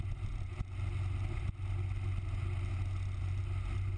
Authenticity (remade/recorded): recorded